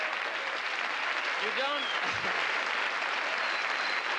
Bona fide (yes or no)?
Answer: yes